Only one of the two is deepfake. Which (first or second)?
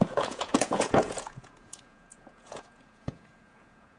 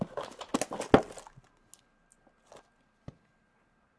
first